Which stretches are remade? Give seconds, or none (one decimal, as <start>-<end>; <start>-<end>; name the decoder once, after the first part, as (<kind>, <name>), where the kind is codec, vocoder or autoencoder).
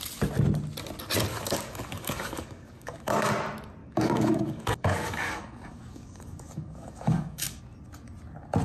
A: 1.3-3.3 (codec, DAC); 3.8-7.6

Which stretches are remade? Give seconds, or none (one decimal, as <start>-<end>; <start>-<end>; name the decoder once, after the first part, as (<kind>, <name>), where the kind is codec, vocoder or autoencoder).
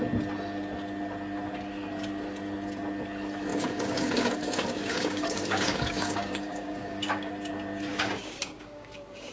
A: 3.5-7.3 (codec, DAC); 7.9-9.3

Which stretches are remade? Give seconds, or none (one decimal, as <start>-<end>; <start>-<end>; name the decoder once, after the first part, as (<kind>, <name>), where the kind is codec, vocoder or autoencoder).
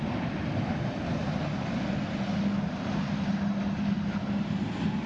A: none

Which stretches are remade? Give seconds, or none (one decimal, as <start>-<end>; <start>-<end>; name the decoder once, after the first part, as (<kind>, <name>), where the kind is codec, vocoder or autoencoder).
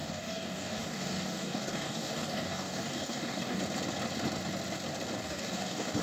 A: 0.0-3.6 (codec, DAC); 5.2-6.0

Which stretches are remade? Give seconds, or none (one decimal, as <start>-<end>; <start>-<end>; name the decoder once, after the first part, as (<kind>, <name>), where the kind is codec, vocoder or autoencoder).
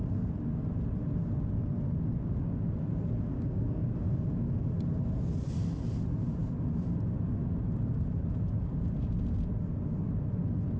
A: 3.3-3.9 (codec, DAC)